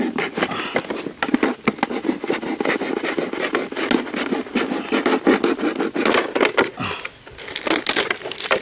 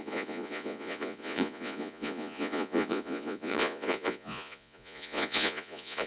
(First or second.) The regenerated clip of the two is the second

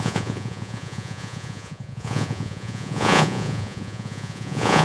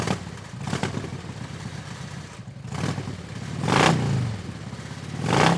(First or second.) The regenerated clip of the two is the first